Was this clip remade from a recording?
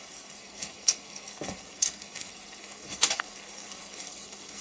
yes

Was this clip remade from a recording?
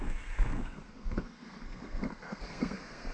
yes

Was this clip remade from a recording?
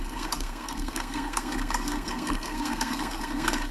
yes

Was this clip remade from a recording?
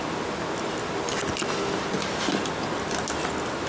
no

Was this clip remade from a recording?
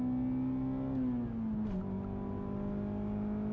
no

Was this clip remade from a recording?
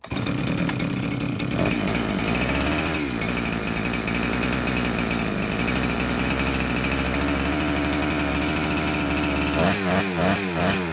no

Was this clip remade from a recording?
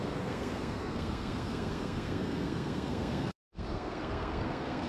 yes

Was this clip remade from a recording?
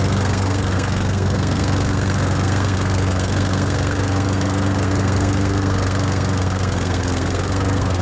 yes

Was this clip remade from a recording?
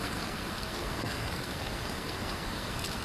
yes